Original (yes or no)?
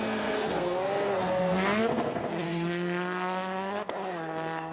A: no